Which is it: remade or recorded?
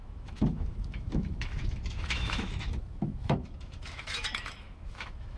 remade